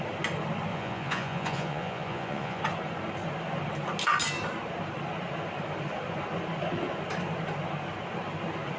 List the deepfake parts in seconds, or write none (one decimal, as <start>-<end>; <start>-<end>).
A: 0.7-2.6